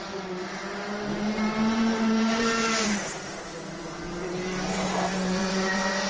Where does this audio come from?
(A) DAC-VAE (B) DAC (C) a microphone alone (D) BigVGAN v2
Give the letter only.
D